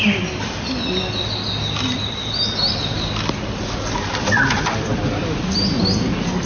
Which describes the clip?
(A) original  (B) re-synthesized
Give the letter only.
A